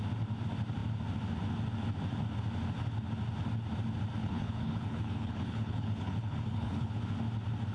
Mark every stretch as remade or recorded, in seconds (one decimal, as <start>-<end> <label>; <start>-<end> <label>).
0.0-4.2 recorded; 4.2-7.0 remade; 7.0-7.7 recorded